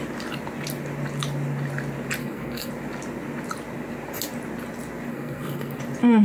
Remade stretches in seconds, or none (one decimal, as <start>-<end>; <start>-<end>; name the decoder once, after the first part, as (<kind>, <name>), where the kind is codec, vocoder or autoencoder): 2.2-2.7 (codec, SNAC); 5.1-5.8